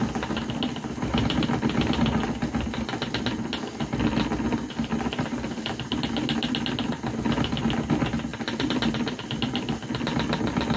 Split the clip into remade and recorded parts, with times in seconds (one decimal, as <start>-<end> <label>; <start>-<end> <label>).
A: 0.0-10.8 recorded